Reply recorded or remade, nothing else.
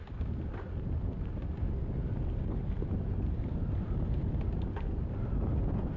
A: recorded